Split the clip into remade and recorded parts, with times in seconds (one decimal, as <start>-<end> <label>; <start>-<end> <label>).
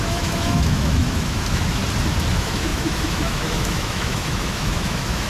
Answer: 0.0-1.8 remade; 1.8-2.3 recorded; 2.3-5.3 remade